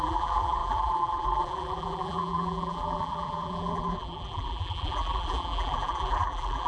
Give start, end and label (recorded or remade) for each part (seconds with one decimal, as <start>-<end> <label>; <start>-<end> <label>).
0.0-6.7 remade